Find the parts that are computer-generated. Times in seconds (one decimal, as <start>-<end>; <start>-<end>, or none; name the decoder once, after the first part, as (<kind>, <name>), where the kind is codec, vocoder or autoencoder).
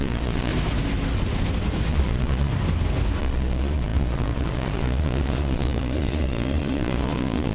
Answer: 0.0-0.5 (vocoder, Vocos); 1.9-2.5; 3.2-7.5